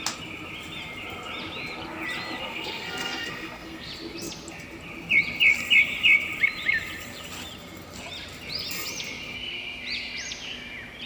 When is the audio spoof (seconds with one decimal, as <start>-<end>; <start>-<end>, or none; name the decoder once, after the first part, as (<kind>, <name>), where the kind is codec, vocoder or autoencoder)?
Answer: 2.4-3.9 (codec, SNAC)